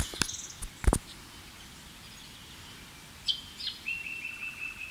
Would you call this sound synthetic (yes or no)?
no